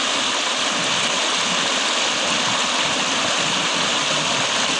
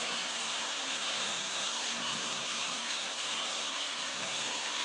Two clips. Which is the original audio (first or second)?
first